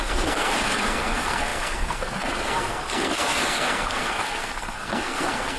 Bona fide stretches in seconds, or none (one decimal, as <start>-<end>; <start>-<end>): none